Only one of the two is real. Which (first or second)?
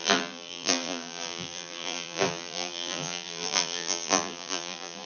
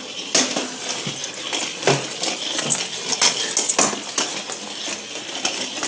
second